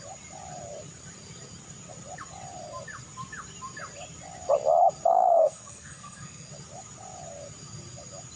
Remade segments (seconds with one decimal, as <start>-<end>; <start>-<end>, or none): 5.1-6.5